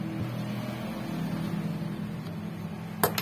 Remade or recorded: recorded